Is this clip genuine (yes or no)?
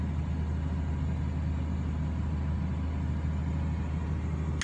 yes